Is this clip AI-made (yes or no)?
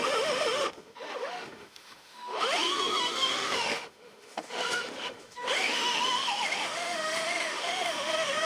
yes